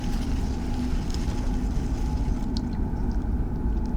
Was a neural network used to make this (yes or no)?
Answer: no